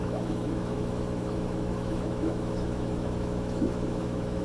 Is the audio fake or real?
fake